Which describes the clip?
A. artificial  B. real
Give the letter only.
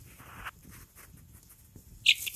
B